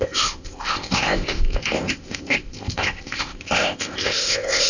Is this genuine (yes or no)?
no